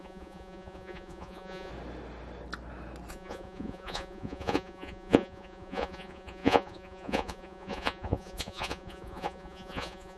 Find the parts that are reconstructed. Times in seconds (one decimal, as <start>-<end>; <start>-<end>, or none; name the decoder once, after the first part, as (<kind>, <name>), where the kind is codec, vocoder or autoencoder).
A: 0.0-1.7 (vocoder, Vocos); 3.1-10.2

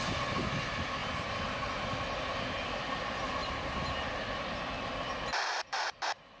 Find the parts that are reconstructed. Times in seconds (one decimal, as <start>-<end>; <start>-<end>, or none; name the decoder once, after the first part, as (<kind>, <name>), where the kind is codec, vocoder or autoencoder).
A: none

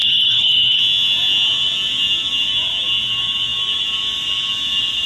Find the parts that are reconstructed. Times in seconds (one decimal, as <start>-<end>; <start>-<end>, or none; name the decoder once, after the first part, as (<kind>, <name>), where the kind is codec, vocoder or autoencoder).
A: 0.0-0.8 (codec, HILCodec)

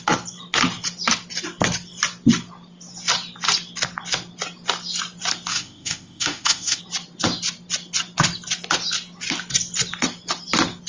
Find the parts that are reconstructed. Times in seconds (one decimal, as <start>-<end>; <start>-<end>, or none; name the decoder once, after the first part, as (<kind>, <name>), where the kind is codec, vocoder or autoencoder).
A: 5.5-6.8 (autoencoder, DAC-VAE)

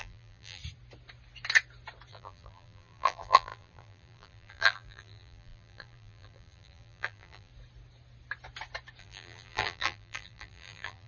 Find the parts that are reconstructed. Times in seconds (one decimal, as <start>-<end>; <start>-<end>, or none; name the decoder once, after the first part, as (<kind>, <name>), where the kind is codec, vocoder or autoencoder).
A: 0.0-0.6 (vocoder, BigVGAN v2); 2.1-7.5; 9.0-11.1

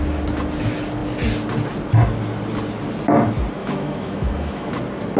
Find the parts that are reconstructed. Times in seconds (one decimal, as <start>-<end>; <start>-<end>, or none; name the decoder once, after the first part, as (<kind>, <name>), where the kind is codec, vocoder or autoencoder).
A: 3.6-4.7 (autoencoder, DAC-VAE)